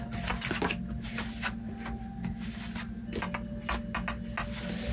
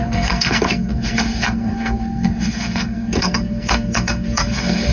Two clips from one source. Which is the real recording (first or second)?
first